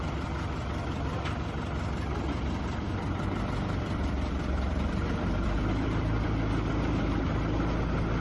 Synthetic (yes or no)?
yes